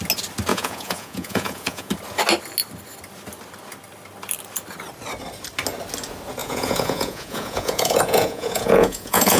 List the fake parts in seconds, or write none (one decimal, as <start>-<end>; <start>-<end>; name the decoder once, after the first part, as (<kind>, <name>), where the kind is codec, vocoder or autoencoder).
0.5-1.9 (vocoder, Vocos); 6.4-9.4

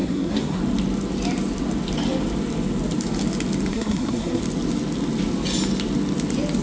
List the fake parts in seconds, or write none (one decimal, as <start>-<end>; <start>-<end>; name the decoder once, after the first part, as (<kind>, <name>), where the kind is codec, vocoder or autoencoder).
0.0-0.6 (codec, SNAC); 3.7-4.4

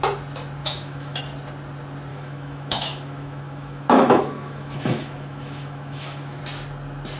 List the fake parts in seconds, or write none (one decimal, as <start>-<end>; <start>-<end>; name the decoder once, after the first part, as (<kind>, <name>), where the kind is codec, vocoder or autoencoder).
0.6-1.2 (autoencoder, DAC-VAE); 2.1-6.4

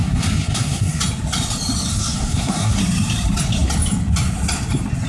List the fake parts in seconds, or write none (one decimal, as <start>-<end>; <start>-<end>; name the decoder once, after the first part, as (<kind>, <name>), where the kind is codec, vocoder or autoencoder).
0.0-1.0 (codec, SNAC); 1.9-2.8

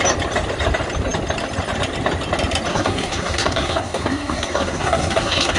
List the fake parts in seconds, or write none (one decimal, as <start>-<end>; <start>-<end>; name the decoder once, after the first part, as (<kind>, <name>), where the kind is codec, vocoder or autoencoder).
2.7-5.6 (codec, SNAC)